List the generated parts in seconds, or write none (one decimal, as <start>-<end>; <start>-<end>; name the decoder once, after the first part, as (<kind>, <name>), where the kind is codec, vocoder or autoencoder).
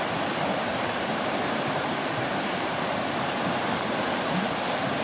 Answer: 0.7-3.7 (vocoder, BigVGAN v2)